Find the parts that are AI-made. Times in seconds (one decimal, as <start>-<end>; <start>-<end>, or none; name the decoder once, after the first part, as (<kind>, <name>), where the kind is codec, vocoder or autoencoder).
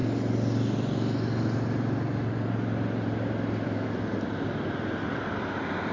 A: none